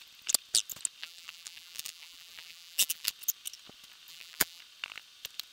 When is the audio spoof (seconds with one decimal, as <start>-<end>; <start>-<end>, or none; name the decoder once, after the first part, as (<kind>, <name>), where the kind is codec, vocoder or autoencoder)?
1.0-3.1 (vocoder, BigVGAN v2); 4.1-4.6